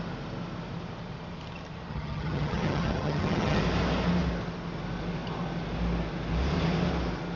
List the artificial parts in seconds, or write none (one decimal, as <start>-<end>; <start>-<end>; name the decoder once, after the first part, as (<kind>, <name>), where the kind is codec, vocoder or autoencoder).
1.9-3.6 (vocoder, HiFi-GAN)